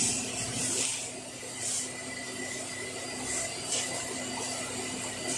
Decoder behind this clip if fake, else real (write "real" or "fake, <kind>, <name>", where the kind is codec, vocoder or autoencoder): real